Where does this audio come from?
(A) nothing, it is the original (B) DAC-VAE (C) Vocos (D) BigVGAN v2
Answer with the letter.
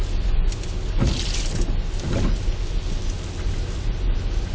A